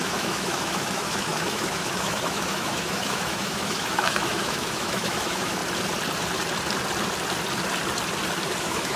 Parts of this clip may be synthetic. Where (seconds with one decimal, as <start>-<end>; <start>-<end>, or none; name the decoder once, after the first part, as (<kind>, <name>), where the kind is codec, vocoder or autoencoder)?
0.0-5.6 (autoencoder, DAC-VAE); 8.6-9.0